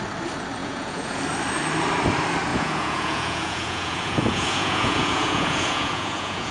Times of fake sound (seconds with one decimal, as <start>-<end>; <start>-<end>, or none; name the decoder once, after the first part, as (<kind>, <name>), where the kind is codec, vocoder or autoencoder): 0.6-1.2 (vocoder, Vocos); 2.5-6.5